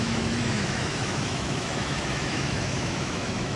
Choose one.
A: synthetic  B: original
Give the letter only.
A